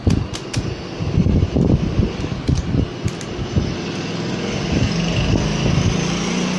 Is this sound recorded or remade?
recorded